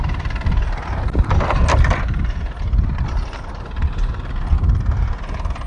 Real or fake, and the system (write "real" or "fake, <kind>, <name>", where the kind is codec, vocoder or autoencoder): real